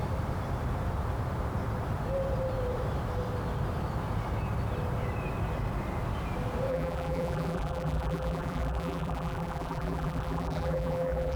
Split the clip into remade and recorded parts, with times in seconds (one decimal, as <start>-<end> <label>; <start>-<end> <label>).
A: 0.0-6.7 recorded; 6.7-11.4 remade